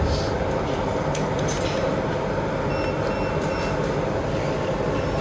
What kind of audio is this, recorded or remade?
recorded